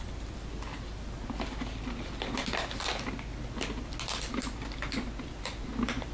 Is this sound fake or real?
real